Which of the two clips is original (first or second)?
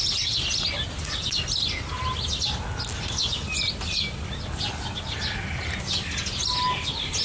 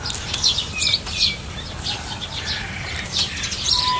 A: first